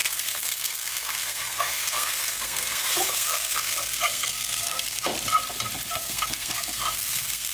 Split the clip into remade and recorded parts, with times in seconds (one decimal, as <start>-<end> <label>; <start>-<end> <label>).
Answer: 0.0-5.1 remade; 5.1-5.9 recorded; 5.9-7.5 remade